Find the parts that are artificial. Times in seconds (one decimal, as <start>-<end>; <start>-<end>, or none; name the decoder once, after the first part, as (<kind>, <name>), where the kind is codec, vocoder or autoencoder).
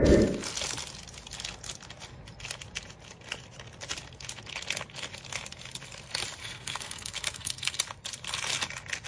6.4-7.8 (codec, SNAC)